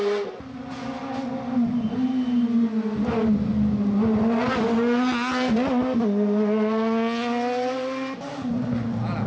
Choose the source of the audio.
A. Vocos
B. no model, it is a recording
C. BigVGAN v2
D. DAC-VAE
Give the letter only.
B